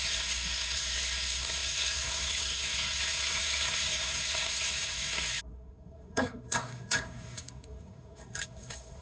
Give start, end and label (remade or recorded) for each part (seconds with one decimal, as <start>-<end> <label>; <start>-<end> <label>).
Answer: 0.0-9.0 remade